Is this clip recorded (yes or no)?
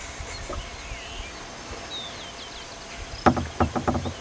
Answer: yes